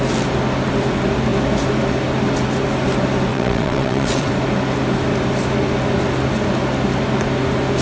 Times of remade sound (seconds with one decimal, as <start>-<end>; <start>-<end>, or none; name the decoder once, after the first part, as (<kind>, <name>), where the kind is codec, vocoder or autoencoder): 3.3-4.3 (vocoder, WaveNeXt)